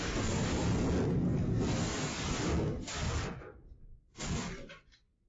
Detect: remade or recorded recorded